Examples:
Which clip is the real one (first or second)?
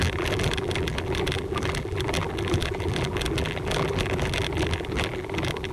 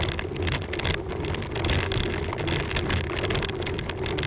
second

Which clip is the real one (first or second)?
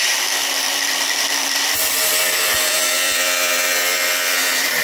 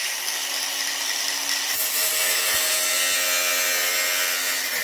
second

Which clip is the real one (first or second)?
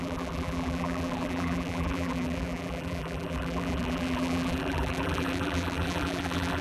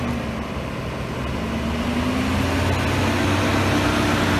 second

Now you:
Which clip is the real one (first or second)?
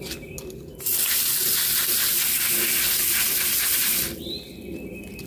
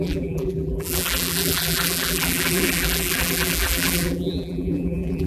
first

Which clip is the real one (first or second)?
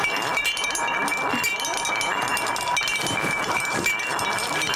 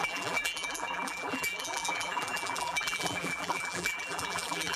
first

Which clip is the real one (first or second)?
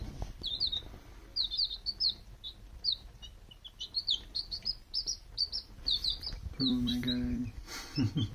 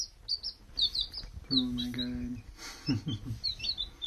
second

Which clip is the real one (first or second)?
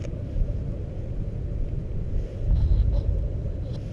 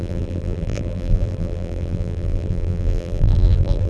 first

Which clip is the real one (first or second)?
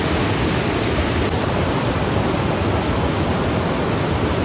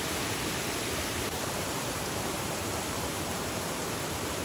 first